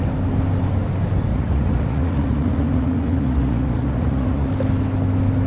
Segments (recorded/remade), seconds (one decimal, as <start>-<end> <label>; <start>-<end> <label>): 0.0-1.3 recorded; 1.3-4.5 remade; 4.5-5.5 recorded